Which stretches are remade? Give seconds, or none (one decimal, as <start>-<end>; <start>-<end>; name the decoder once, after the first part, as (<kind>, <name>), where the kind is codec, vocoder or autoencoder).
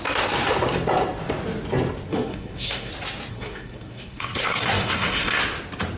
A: 2.1-2.9 (codec, SNAC); 3.3-5.4